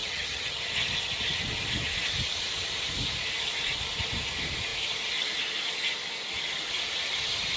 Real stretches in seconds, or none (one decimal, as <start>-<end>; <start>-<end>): 0.6-7.6